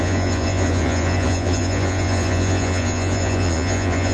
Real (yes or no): no